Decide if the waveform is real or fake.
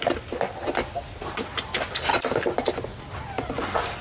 real